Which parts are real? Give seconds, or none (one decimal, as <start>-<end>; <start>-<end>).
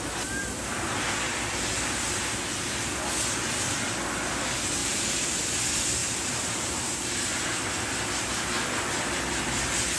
0.0-4.8; 5.4-6.0; 7.4-10.0